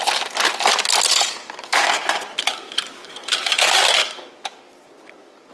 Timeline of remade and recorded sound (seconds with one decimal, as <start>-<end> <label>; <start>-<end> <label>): 0.0-1.4 recorded; 1.4-3.5 remade; 3.5-4.0 recorded; 4.0-5.5 remade